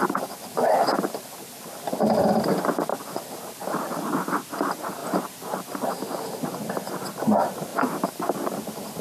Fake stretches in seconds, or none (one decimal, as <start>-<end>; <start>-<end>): none